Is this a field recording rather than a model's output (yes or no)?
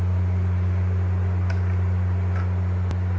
yes